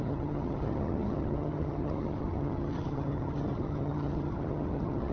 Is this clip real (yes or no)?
no